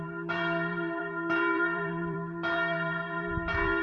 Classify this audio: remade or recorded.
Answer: remade